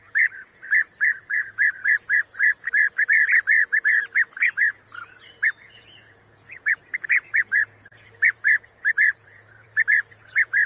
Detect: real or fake fake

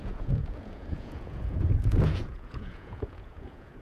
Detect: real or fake fake